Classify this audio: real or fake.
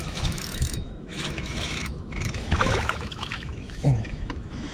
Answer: fake